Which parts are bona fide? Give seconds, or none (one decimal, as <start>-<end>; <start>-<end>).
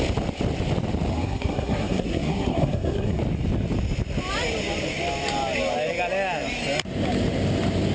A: 0.0-1.1; 3.2-7.9